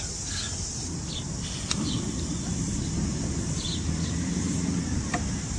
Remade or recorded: remade